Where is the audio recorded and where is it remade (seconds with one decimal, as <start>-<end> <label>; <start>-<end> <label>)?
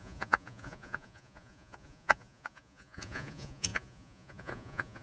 0.0-5.0 remade